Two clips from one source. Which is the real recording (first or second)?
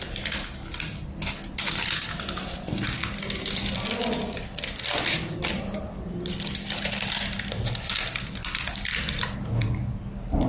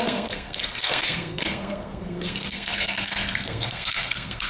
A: first